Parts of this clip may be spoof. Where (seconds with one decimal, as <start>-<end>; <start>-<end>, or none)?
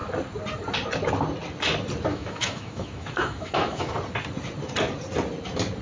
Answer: 2.1-3.9